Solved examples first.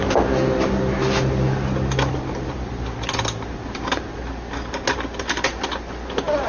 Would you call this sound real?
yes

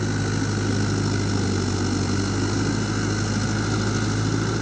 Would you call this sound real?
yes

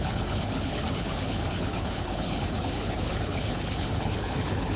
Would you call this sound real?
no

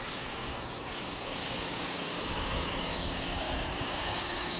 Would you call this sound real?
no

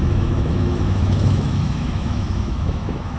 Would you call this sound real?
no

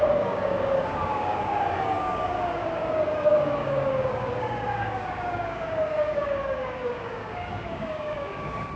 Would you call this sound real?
no